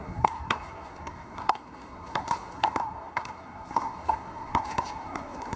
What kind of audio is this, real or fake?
fake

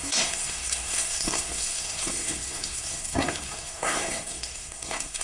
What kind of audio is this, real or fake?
fake